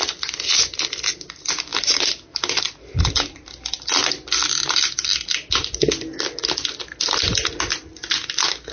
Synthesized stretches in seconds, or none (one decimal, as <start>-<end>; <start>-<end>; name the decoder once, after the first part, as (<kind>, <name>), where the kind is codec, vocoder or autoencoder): none